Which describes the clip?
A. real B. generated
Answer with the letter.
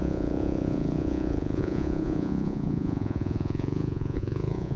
B